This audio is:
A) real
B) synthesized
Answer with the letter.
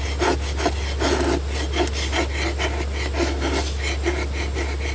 A